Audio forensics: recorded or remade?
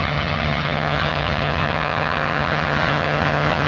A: remade